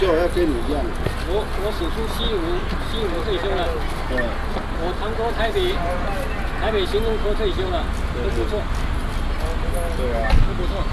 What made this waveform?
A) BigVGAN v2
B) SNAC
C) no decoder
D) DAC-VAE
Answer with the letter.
C